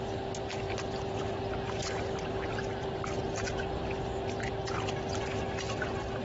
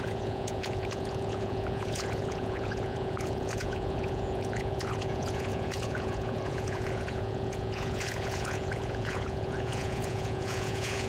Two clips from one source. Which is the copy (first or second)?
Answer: second